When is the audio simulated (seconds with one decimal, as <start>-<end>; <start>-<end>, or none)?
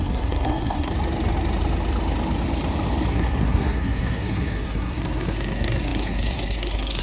0.0-0.9; 3.1-7.0